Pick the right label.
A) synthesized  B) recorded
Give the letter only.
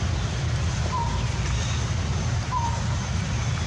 B